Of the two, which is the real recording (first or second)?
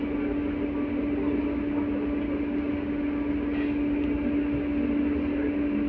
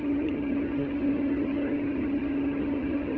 first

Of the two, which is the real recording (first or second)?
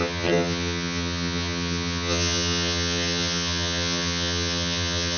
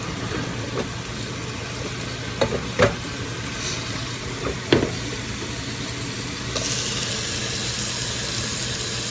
second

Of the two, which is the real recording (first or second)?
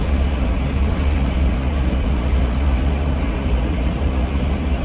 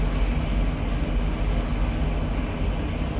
second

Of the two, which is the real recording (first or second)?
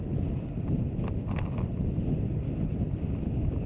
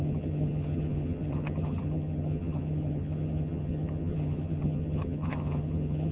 first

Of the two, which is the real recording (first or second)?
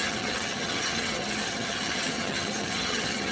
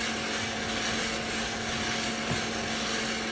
second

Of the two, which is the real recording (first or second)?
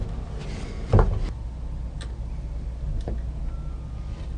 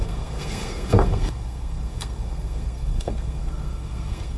first